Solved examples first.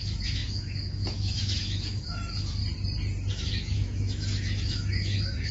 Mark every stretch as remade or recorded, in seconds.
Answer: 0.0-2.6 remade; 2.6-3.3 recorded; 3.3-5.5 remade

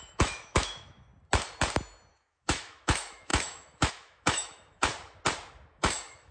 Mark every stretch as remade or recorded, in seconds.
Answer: 0.0-1.1 remade; 1.1-2.1 recorded; 2.1-4.9 remade; 4.9-5.7 recorded; 5.7-6.3 remade

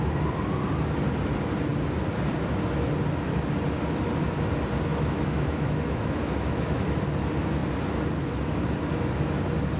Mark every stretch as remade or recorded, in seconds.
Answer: 0.0-4.9 recorded; 4.9-7.0 remade; 7.0-9.8 recorded

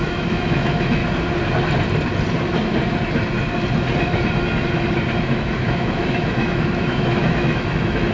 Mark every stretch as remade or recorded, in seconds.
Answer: 0.0-1.0 remade; 1.0-5.2 recorded; 5.2-8.1 remade

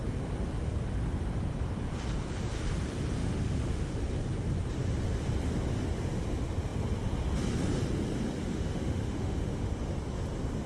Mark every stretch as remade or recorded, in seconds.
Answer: 0.0-3.2 recorded; 3.2-4.0 remade; 4.0-8.4 recorded; 8.4-9.7 remade; 9.7-10.7 recorded

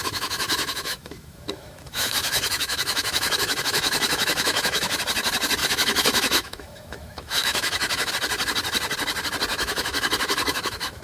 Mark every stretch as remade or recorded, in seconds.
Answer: 0.0-5.0 remade; 5.0-5.6 recorded; 5.6-8.1 remade; 8.1-9.5 recorded; 9.5-11.0 remade

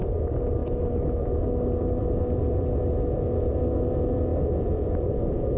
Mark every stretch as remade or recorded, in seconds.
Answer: 0.0-5.6 recorded